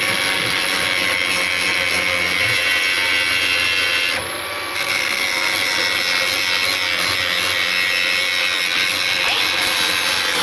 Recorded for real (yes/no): yes